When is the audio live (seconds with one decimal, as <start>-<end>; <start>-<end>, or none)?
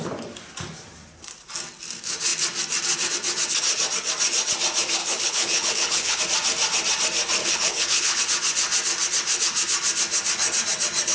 0.0-5.0; 6.2-7.4; 8.2-11.1